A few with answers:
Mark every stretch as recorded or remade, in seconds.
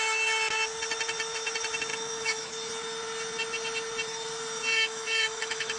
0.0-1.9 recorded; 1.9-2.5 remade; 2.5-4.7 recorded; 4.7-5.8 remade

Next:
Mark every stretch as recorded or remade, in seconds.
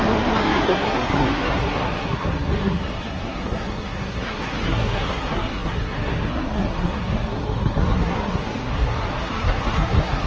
0.0-10.3 remade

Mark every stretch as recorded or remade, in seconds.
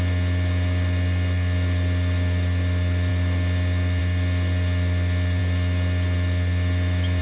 0.0-7.2 recorded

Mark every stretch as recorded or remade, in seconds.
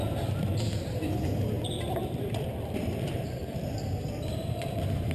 0.0-3.0 recorded; 3.0-3.4 remade; 3.4-4.3 recorded; 4.3-5.1 remade